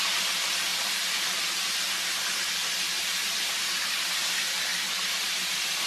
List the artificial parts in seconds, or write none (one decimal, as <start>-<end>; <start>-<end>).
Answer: 0.7-4.2; 4.7-5.9